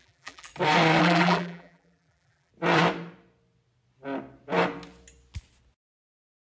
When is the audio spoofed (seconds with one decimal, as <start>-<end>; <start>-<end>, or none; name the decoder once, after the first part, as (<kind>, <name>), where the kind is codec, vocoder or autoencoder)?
0.0-0.5 (vocoder, BigVGAN v2); 1.0-2.5